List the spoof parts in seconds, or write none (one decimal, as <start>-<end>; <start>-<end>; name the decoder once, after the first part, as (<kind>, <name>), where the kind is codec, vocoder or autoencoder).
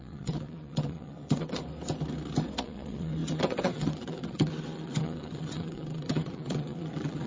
0.0-1.6 (vocoder, WaveNeXt); 2.6-7.3